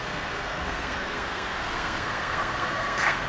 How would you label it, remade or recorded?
remade